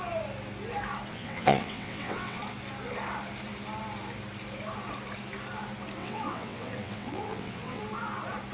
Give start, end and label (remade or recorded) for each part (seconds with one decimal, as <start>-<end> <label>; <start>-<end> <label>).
0.0-1.1 recorded; 1.1-2.4 remade; 2.4-6.0 recorded; 6.0-7.8 remade; 7.8-8.5 recorded